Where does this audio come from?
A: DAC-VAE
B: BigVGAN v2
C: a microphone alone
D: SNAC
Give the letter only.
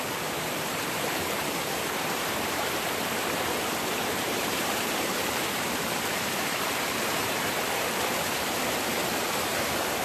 B